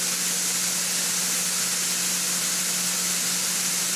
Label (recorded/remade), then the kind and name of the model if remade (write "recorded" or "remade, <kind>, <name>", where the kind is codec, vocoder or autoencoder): recorded